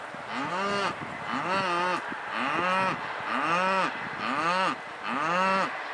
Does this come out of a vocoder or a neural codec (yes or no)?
no